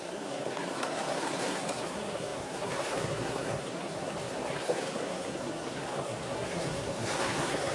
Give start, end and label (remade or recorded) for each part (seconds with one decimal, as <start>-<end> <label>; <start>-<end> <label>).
0.0-7.7 remade